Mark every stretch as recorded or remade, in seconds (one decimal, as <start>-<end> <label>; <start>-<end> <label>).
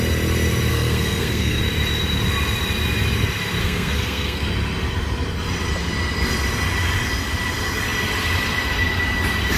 0.0-0.7 recorded; 0.7-1.6 remade; 1.6-3.6 recorded; 3.6-4.5 remade; 4.5-9.6 recorded